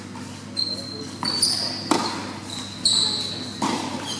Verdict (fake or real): real